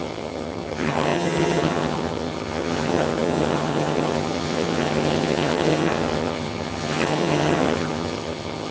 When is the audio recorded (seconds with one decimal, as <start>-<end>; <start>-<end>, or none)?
none